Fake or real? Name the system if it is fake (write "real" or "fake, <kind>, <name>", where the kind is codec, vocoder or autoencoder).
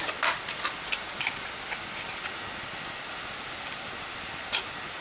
real